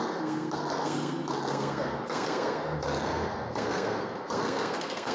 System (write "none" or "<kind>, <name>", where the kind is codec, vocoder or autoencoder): codec, SNAC